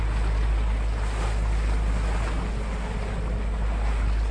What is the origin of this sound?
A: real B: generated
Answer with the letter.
A